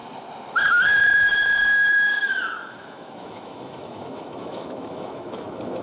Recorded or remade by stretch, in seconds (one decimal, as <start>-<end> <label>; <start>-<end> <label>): 0.0-0.7 recorded; 0.7-5.8 remade